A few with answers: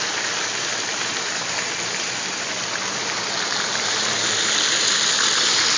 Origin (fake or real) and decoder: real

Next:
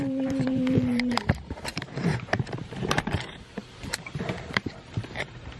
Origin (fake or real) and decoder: fake, vocoder, BigVGAN v2